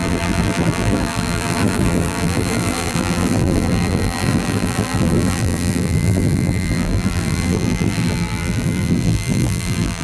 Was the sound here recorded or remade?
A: remade